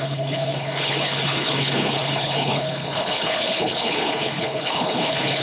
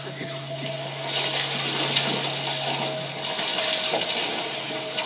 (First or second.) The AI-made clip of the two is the first